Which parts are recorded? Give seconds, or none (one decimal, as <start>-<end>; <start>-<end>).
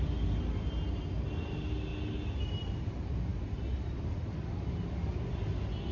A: 0.0-5.9